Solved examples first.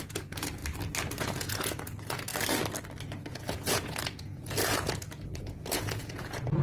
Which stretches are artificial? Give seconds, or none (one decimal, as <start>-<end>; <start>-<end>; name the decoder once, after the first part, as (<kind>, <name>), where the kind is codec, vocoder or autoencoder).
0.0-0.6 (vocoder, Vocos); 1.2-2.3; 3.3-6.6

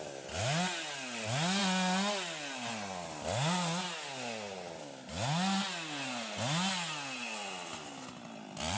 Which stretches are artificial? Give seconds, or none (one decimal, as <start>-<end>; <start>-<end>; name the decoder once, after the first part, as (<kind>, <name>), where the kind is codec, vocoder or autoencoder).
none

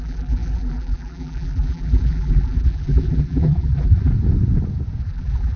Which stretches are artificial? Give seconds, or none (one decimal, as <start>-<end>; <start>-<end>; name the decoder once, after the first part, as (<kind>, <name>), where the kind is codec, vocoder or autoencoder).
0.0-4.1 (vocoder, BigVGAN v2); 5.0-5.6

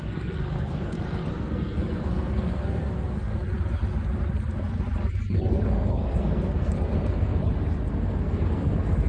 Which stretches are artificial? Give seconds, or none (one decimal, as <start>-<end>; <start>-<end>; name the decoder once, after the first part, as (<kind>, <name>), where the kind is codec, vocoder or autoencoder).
0.0-3.3 (codec, SNAC); 5.3-7.4; 8.0-9.1

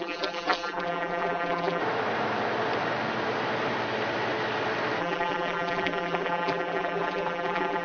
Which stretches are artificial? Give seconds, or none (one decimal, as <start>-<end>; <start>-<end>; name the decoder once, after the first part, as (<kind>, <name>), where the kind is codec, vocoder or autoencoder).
0.0-1.8 (vocoder, BigVGAN v2); 5.0-7.8

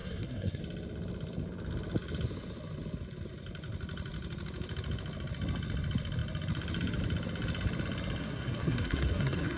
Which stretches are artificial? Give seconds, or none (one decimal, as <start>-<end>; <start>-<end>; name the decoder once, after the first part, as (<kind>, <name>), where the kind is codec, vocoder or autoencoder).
0.0-0.6 (codec, SNAC); 8.2-9.6

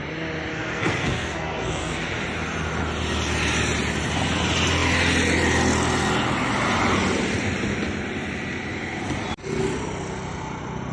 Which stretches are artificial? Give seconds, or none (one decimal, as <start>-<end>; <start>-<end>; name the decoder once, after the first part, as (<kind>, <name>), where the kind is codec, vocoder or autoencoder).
0.5-2.1 (codec, SNAC)

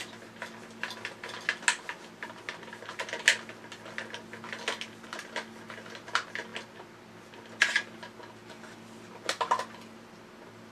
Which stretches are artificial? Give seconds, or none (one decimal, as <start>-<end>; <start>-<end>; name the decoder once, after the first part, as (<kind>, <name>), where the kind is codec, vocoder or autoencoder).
none